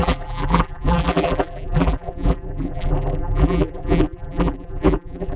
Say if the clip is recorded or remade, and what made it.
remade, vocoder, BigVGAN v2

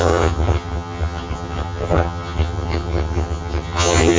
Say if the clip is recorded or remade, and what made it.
remade, vocoder, HiFi-GAN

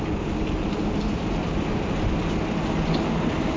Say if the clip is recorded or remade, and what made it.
recorded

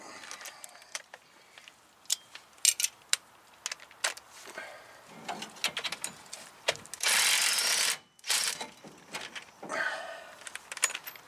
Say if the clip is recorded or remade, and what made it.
recorded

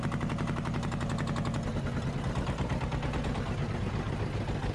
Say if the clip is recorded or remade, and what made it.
recorded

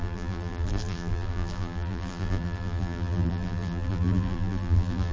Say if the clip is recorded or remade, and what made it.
remade, vocoder, BigVGAN v2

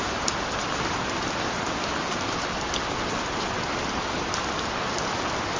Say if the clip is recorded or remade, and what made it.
recorded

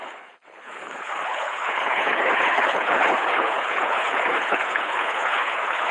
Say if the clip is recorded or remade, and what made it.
remade, codec, HILCodec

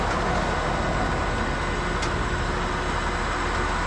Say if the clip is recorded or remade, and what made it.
recorded